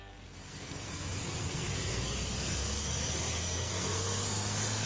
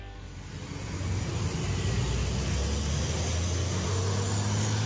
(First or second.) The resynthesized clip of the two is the first